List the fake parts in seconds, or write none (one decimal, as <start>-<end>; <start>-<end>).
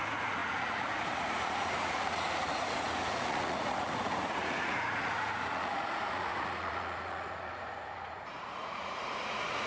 0.0-9.7